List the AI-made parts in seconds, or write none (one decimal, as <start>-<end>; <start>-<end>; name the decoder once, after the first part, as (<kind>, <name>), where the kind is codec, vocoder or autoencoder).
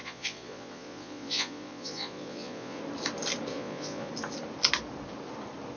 0.0-2.8 (vocoder, Vocos); 3.5-4.1